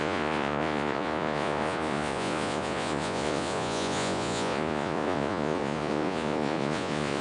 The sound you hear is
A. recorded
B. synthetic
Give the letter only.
B